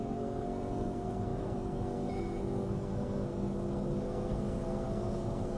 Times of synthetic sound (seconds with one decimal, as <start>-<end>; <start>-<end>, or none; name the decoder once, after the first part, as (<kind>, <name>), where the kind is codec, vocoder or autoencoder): 0.0-5.6 (codec, SNAC)